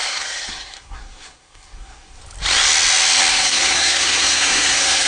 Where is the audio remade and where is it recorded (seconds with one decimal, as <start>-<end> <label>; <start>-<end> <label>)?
0.0-2.2 remade; 2.2-3.3 recorded; 3.3-5.1 remade